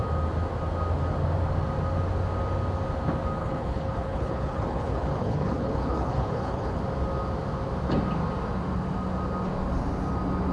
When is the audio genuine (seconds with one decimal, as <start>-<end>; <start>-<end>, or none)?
0.0-3.4; 6.8-10.5

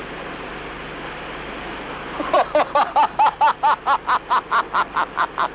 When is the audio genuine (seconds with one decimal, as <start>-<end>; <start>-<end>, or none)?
0.0-5.5

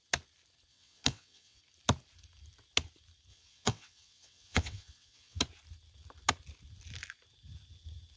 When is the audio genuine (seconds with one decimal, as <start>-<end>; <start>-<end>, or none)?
0.0-0.7; 1.6-3.3; 5.4-8.2

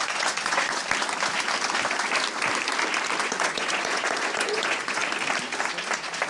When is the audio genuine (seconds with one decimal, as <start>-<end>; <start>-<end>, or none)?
0.8-3.2; 5.0-6.3

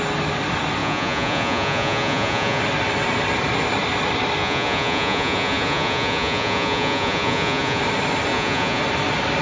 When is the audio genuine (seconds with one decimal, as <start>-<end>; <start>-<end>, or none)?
0.0-0.8; 2.6-4.4; 7.8-8.3; 8.8-9.4

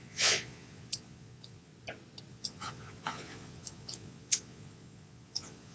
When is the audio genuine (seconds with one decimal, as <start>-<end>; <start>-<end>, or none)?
1.7-2.3

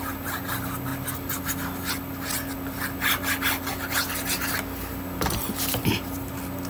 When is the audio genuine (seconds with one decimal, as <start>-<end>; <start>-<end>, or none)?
0.0-6.7

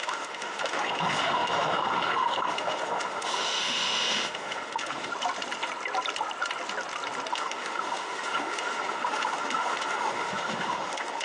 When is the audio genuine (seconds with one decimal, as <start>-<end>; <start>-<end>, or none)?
5.1-7.3